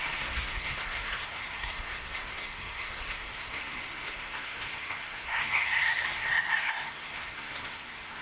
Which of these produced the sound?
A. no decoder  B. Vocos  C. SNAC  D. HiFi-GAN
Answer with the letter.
C